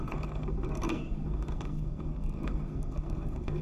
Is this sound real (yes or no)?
no